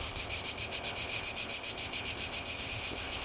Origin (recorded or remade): remade